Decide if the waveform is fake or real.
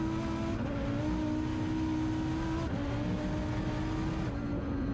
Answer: real